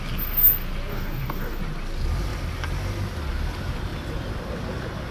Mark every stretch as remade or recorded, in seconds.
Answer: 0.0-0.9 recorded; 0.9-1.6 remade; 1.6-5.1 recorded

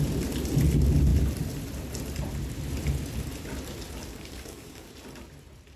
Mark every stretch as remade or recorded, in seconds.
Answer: 0.0-4.1 recorded; 4.1-4.9 remade; 4.9-5.8 recorded

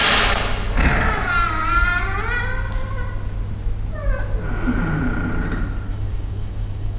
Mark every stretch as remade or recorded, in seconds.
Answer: 0.0-5.9 recorded; 5.9-7.0 remade

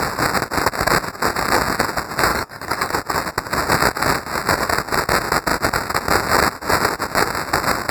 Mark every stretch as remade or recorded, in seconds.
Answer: 0.0-2.3 recorded; 2.3-2.9 remade; 2.9-7.9 recorded

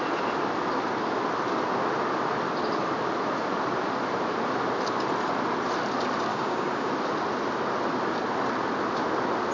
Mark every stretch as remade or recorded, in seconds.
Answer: 0.0-6.3 recorded; 6.3-6.9 remade; 6.9-9.5 recorded